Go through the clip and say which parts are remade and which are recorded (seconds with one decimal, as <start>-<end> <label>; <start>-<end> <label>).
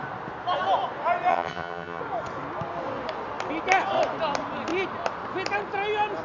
0.0-1.3 recorded; 1.3-2.0 remade; 2.0-6.2 recorded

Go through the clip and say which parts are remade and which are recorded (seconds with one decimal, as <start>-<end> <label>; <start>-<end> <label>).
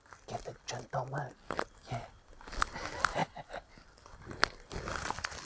0.0-5.4 recorded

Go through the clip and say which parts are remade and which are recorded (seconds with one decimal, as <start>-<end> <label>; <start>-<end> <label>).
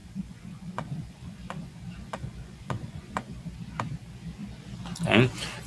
0.0-3.4 remade; 3.4-5.7 recorded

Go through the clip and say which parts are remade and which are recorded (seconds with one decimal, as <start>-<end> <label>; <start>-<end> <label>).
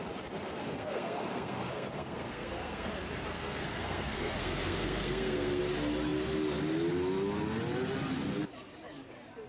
0.0-0.6 recorded; 0.6-2.9 remade; 2.9-3.3 recorded; 3.3-5.6 remade; 5.6-9.5 recorded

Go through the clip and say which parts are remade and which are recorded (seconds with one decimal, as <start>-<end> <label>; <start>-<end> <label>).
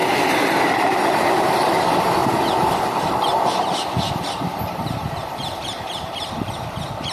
0.0-1.3 recorded; 1.3-2.2 remade; 2.2-2.7 recorded; 2.7-3.4 remade; 3.4-4.2 recorded; 4.2-7.1 remade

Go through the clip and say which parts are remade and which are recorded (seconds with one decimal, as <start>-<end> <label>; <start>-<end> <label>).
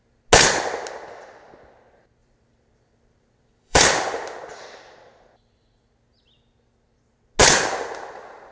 0.0-2.2 recorded; 2.2-3.8 remade; 3.8-8.5 recorded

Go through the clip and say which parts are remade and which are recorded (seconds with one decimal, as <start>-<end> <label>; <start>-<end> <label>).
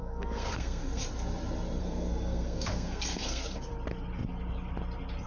0.0-1.0 remade; 1.0-1.8 recorded; 1.8-3.7 remade; 3.7-5.3 recorded